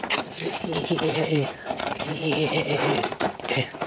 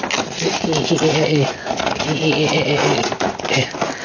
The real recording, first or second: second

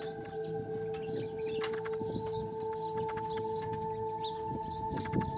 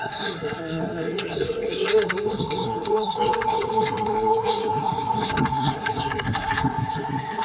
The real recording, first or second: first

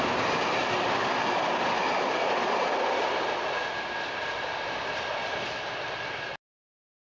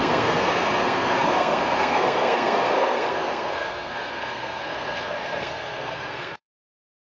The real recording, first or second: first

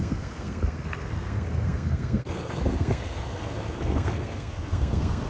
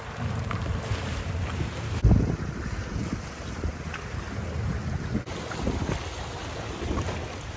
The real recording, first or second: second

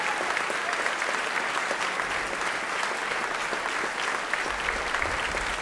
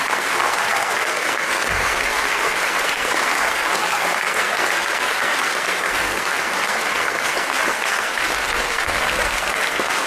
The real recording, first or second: first